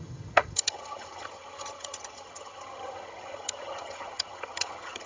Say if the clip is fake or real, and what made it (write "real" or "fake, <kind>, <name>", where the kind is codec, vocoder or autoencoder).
fake, vocoder, HiFi-GAN